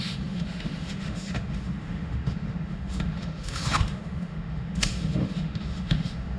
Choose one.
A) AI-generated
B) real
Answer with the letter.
A